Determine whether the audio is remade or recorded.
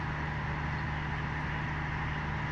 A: recorded